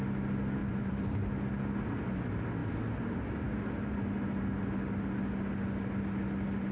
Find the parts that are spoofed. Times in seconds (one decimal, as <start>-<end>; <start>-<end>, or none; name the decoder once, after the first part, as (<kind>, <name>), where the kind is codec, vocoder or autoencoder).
0.6-1.4 (vocoder, BigVGAN v2)